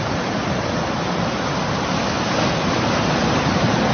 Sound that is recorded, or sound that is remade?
recorded